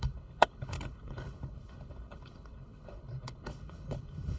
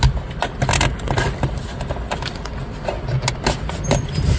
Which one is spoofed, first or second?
first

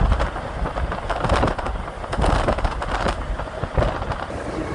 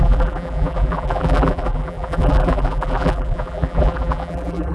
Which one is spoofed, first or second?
second